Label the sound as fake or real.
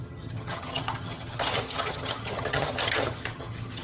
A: fake